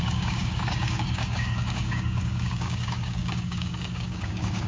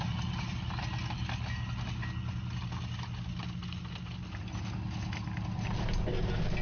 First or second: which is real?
second